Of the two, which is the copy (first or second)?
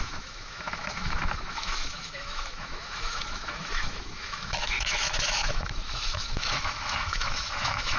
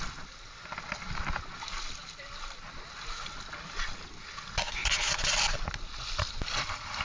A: first